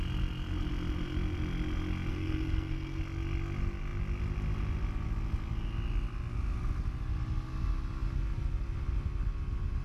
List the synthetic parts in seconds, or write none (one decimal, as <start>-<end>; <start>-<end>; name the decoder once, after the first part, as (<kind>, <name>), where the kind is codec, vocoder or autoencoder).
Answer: 2.1-3.0 (codec, SNAC)